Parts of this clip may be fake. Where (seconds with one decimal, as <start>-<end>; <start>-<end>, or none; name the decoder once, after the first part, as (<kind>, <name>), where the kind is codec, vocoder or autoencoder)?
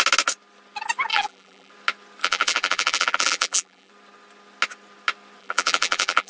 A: 1.1-1.7 (vocoder, BigVGAN v2); 2.2-3.9; 5.4-6.3